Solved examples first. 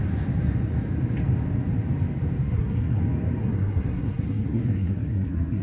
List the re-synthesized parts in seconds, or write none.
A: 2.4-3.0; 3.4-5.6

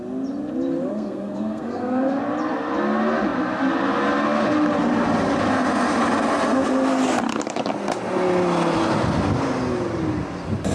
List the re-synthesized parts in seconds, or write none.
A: 0.9-2.2

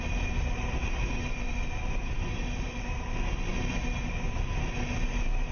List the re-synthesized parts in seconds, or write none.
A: none

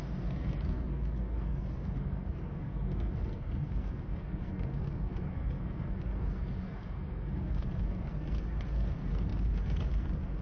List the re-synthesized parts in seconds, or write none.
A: 0.0-10.4

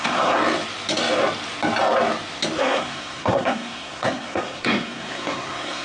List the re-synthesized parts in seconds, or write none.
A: 0.0-0.4; 2.6-5.8

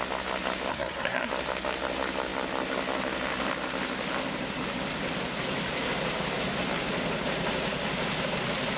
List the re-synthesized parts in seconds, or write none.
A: 0.7-1.3

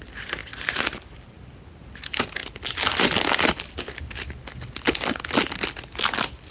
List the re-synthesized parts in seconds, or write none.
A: none

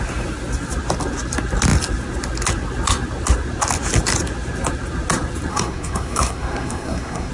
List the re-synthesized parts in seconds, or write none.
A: 5.5-7.3